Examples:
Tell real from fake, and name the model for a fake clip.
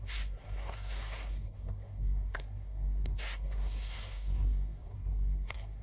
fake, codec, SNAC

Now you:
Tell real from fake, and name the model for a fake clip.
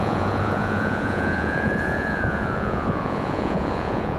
fake, vocoder, Vocos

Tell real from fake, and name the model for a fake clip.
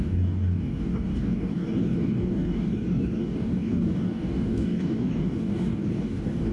fake, codec, DAC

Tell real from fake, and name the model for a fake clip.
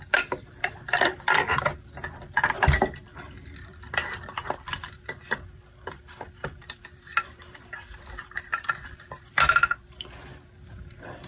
fake, vocoder, BigVGAN v2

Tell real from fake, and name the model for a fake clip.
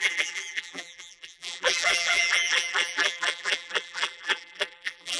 fake, vocoder, BigVGAN v2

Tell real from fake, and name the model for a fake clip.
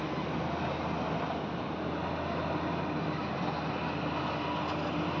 real